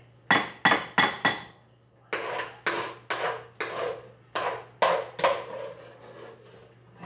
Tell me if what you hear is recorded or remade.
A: recorded